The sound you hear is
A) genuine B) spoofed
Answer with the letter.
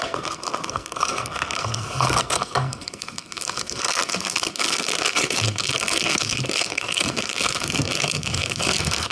B